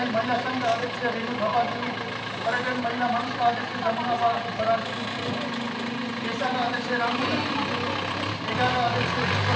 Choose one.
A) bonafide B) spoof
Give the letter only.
A